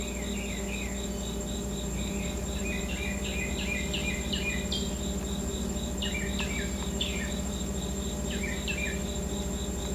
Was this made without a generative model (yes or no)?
yes